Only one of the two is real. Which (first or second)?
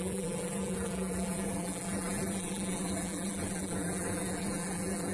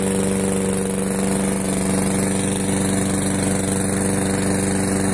second